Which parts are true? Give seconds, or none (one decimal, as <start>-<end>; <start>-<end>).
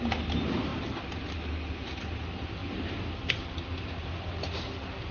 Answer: 0.0-5.1